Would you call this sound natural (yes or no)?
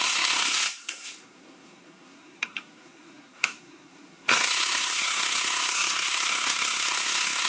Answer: no